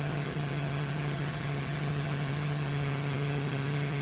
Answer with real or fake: fake